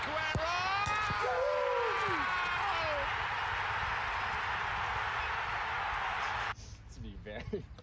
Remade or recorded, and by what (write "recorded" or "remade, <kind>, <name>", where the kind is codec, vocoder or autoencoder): recorded